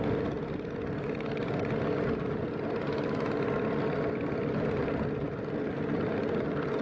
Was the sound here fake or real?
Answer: real